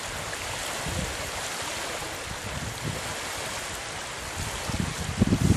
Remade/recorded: recorded